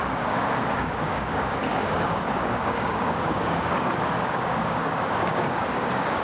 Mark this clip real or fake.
fake